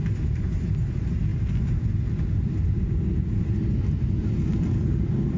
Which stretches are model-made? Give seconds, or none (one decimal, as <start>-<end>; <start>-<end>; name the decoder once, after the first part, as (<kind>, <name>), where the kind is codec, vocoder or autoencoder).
none